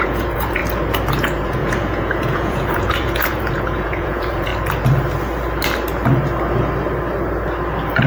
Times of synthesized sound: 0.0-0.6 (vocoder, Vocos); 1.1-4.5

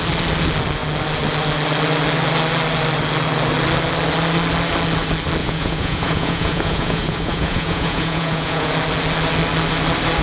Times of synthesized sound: 5.4-8.7 (vocoder, Vocos)

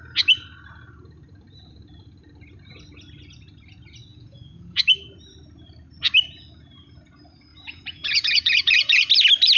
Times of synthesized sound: 4.1-4.8 (vocoder, Vocos); 7.5-9.1

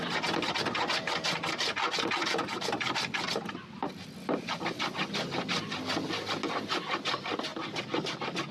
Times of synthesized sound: none

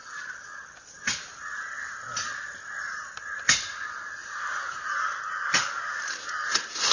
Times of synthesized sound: none

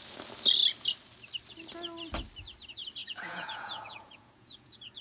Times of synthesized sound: 3.0-5.0 (vocoder, Vocos)